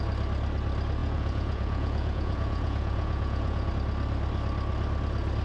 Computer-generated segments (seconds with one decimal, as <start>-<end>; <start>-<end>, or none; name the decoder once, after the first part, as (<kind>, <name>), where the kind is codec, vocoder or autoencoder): 1.0-3.7 (vocoder, Vocos)